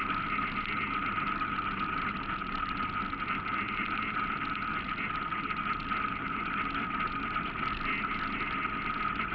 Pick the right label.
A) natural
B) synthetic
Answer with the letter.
A